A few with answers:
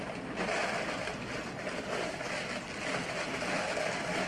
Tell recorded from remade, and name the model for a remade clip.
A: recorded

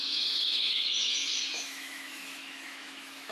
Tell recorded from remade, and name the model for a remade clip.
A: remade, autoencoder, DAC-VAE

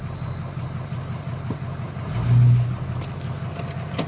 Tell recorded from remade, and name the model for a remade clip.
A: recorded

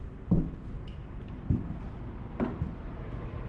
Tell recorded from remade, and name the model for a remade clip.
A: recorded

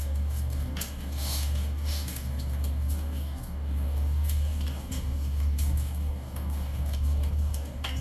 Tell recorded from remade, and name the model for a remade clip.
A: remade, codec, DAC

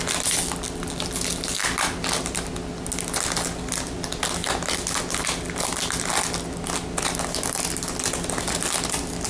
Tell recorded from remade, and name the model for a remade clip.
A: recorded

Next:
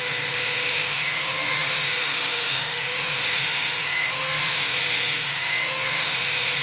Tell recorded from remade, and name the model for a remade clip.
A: remade, autoencoder, DAC-VAE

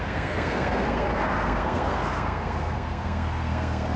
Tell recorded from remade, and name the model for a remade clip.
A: remade, codec, SNAC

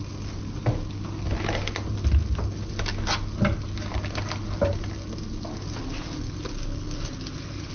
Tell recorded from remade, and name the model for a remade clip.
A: recorded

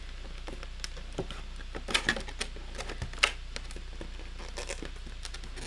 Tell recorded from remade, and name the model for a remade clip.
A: recorded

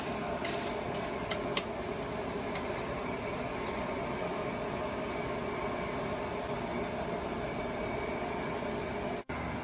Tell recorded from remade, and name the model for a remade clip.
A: recorded